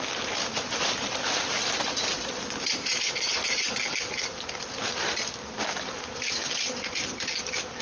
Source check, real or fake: fake